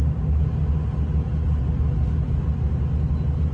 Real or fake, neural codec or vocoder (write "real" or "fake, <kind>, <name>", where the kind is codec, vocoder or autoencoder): real